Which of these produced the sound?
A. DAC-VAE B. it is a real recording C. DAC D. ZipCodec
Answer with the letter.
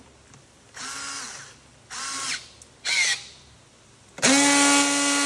B